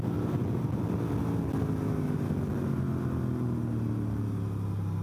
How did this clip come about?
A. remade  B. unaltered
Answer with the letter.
B